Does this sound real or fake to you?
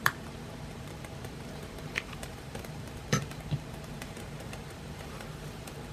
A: fake